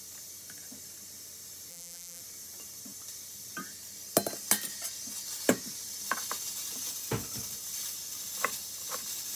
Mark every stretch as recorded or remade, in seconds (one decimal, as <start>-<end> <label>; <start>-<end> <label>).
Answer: 0.0-1.7 recorded; 1.7-2.2 remade; 2.2-9.4 recorded